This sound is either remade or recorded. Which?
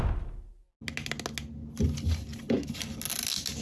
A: recorded